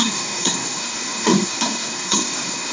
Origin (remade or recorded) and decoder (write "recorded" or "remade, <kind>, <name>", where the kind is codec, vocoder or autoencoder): remade, codec, SNAC